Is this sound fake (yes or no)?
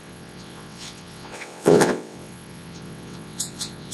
yes